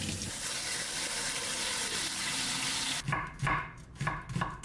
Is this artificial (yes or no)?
no